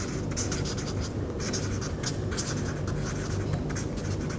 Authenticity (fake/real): real